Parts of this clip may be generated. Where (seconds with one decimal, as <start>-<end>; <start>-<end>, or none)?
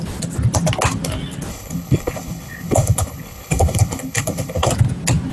1.5-4.7